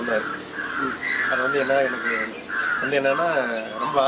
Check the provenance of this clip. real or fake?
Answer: real